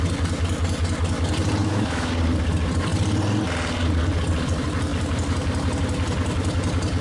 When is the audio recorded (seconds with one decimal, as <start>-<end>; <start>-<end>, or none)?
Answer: 0.0-1.6; 2.1-7.0